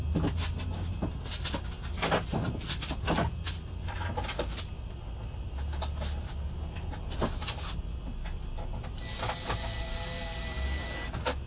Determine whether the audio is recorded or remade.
recorded